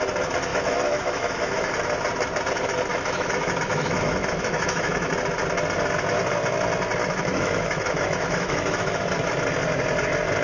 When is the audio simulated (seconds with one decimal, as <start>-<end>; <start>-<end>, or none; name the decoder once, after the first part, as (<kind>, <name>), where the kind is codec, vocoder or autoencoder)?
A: 0.5-1.7 (autoencoder, DAC-VAE); 2.9-5.1; 7.0-9.0